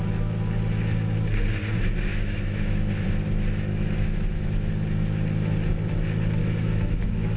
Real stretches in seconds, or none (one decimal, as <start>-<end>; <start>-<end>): 0.0-2.1; 2.9-3.7; 4.7-6.4